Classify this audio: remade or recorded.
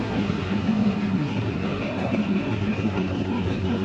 remade